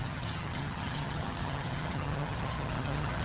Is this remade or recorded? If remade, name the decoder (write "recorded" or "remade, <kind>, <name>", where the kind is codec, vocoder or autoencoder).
remade, vocoder, HiFi-GAN